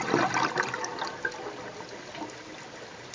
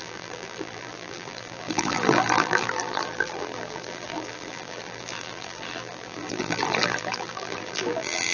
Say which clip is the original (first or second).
first